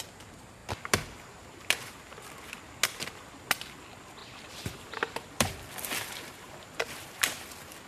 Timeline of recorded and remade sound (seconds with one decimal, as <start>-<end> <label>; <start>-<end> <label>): 0.0-4.2 recorded; 4.2-7.4 remade; 7.4-7.9 recorded